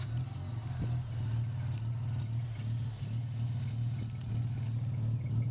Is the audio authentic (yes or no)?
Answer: yes